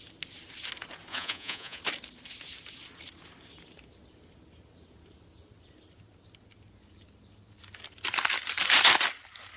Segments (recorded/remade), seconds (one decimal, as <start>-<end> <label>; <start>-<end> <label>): 0.0-1.1 recorded; 1.1-1.8 remade; 1.8-9.6 recorded